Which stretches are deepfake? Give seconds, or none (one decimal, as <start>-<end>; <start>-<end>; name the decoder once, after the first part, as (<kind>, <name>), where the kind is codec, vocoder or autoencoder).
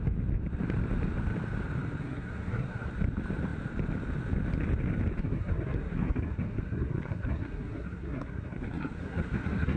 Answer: 2.0-2.9 (codec, SNAC); 5.2-9.8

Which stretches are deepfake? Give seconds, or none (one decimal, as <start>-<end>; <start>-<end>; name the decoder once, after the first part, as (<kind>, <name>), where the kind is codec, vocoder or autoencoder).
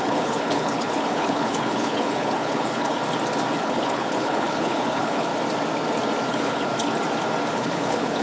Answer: 0.0-3.0 (codec, HILCodec); 3.6-5.3; 6.3-6.7; 7.5-8.2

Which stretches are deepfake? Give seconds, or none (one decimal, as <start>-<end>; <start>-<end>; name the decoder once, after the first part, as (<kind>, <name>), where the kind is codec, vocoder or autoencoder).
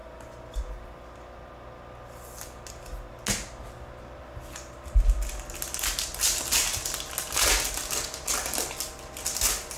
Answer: none